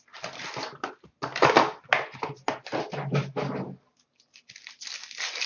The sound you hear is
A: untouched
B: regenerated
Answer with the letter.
A